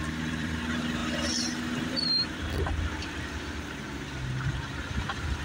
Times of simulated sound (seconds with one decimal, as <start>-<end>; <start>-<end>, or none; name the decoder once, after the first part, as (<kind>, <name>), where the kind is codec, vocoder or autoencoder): 0.0-5.4 (vocoder, BigVGAN v2)